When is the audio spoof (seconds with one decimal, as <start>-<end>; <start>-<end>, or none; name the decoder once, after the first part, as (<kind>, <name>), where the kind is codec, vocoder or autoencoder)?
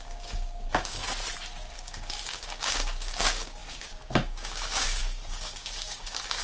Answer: 0.0-1.0 (codec, DAC); 1.7-6.4